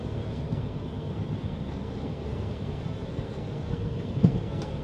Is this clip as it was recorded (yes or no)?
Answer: no